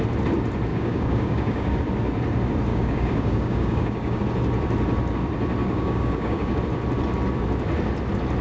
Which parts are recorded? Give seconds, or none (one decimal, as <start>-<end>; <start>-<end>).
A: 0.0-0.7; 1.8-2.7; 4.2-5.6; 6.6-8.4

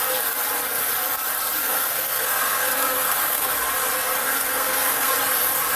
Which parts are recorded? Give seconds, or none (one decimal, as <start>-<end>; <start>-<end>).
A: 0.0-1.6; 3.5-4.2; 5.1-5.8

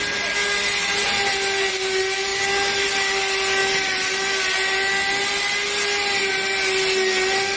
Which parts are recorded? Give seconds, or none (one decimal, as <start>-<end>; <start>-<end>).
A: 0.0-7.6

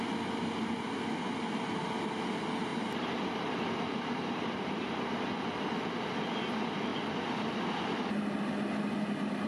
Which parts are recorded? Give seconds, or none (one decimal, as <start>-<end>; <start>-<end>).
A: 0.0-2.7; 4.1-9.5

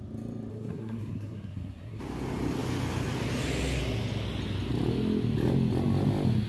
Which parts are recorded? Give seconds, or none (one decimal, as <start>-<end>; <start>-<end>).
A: 0.0-0.5; 2.0-6.5

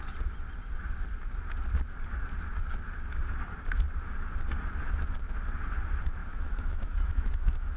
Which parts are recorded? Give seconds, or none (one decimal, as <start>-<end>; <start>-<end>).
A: 0.0-6.2

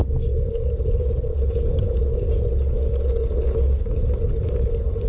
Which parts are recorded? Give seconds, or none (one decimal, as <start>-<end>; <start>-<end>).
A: 0.0-0.7; 2.0-4.2